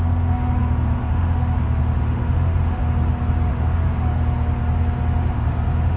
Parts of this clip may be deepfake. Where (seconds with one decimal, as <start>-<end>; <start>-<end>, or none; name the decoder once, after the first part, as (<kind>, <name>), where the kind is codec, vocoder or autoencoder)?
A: 0.0-2.8 (autoencoder, DAC-VAE); 3.5-4.1; 5.2-6.0